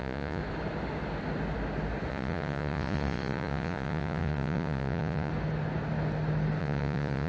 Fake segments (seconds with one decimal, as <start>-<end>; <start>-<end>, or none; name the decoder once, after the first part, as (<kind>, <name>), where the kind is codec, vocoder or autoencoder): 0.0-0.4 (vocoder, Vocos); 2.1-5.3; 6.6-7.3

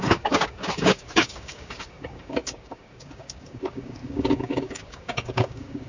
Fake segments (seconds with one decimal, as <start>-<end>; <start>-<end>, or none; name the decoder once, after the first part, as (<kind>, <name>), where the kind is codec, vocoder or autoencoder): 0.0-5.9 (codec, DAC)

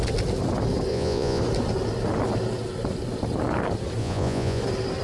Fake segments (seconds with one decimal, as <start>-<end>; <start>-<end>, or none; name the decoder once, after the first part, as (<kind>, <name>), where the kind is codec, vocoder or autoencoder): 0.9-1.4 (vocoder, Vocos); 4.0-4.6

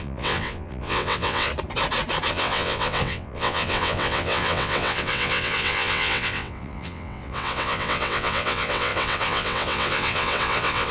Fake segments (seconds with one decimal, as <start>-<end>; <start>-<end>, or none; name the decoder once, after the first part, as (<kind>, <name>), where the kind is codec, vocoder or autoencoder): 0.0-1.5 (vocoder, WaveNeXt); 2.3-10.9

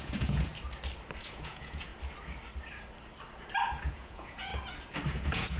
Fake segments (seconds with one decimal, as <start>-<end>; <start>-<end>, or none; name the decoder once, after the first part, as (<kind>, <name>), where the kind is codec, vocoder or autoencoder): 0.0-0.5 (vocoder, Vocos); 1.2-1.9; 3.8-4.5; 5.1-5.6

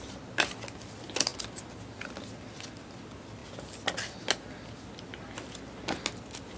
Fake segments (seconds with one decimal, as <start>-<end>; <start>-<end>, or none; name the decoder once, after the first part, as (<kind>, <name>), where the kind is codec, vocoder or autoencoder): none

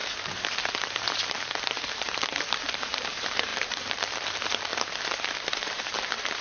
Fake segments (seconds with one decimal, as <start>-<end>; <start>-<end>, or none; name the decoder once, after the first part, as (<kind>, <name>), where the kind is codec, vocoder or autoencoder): 0.0-4.7 (vocoder, BigVGAN v2); 5.5-6.4

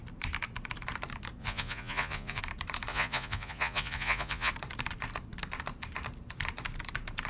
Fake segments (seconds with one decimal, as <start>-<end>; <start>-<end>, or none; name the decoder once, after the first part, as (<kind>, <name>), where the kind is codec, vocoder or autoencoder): 1.4-2.4 (vocoder, Vocos); 2.9-4.5